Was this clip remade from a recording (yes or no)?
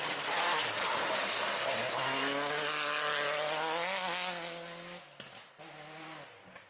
no